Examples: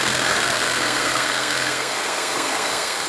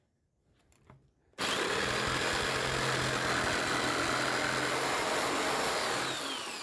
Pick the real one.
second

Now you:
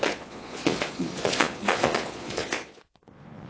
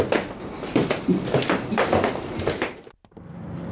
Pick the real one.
second